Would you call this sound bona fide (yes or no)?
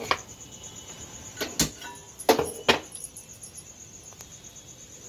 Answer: yes